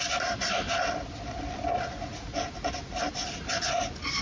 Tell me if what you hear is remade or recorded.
recorded